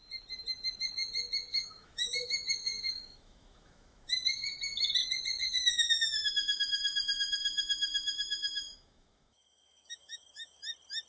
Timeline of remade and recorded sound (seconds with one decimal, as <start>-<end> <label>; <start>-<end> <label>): 0.0-1.5 recorded; 1.5-4.9 remade; 4.9-5.4 recorded; 5.4-10.6 remade; 10.6-11.1 recorded